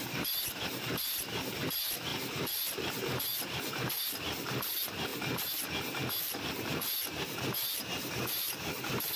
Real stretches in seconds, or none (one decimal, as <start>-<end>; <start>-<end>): 5.1-6.1